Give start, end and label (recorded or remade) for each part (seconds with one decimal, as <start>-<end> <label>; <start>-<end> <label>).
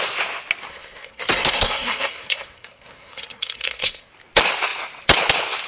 0.0-0.7 recorded; 0.7-4.1 remade; 4.1-5.7 recorded